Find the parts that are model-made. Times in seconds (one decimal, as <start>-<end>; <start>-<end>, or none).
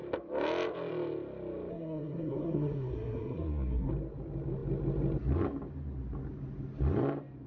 1.7-3.9